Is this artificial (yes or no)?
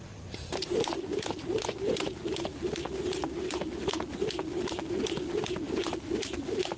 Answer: yes